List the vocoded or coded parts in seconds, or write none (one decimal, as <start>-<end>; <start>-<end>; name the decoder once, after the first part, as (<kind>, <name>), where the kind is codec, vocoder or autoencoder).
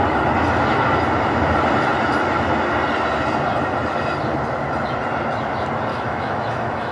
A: 5.9-6.9 (autoencoder, DAC-VAE)